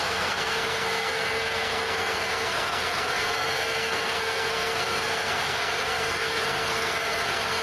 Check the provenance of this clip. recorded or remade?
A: remade